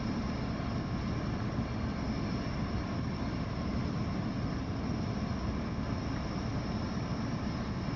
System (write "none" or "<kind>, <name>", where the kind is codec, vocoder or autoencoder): none